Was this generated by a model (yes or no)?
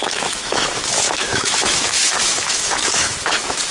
yes